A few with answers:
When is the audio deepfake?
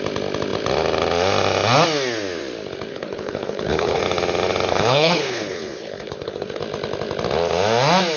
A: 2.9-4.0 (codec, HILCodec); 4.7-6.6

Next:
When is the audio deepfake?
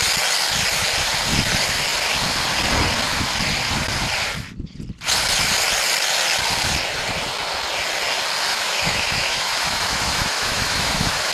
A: 8.5-11.3 (autoencoder, DAC-VAE)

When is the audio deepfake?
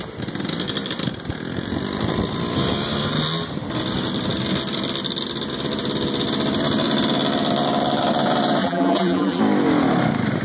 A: 8.6-9.4 (vocoder, BigVGAN v2)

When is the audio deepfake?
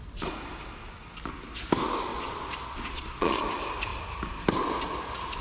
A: 2.1-3.4 (vocoder, Vocos)